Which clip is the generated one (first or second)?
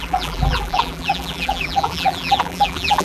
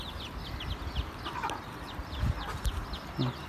first